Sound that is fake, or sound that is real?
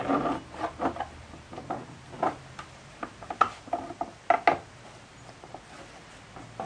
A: real